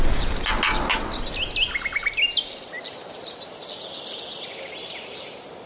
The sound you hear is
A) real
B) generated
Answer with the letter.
A